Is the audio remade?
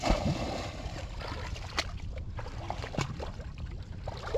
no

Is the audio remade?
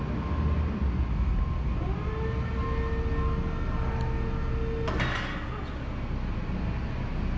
no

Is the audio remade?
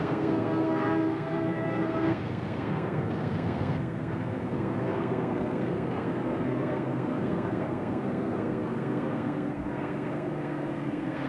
yes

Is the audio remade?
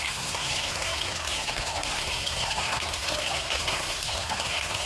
yes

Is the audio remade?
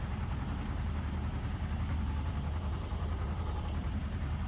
yes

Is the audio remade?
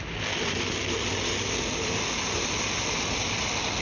no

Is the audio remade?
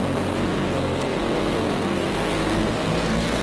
yes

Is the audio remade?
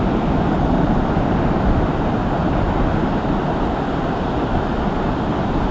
no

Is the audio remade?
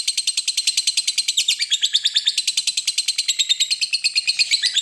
no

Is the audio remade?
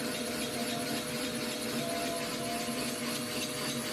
no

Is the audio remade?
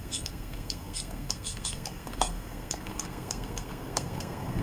yes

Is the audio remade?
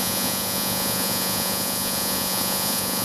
yes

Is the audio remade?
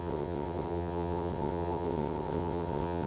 yes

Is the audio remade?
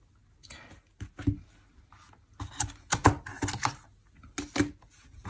no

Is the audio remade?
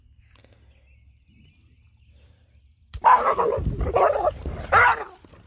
no